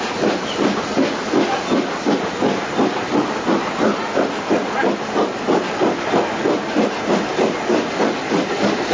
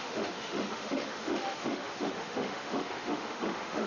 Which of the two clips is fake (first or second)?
second